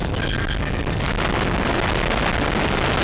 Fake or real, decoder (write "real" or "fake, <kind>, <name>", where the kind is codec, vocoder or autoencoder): real